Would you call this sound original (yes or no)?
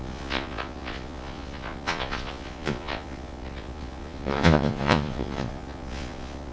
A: no